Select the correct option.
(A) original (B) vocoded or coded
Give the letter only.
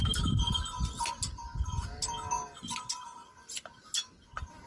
A